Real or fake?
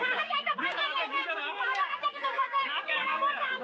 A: fake